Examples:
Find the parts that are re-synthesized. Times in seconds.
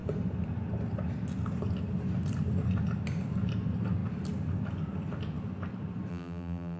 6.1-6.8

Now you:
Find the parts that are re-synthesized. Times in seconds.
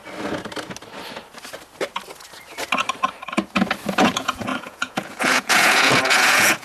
4.0-6.6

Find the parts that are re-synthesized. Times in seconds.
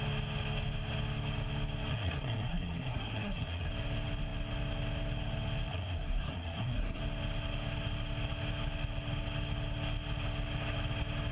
1.9-3.7; 5.7-7.0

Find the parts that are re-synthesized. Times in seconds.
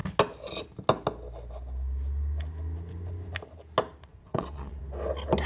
4.1-4.8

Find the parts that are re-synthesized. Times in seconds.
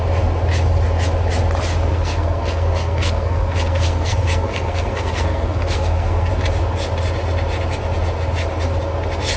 1.9-6.3